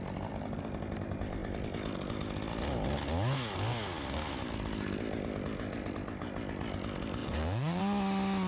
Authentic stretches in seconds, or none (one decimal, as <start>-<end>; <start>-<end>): 0.0-7.2; 7.8-8.5